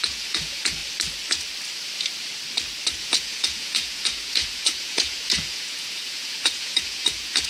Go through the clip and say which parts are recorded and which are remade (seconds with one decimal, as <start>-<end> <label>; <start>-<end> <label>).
0.0-0.8 remade; 0.8-3.0 recorded; 3.0-7.5 remade